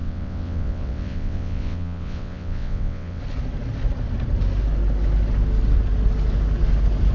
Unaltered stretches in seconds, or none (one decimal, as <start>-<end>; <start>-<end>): 3.2-7.1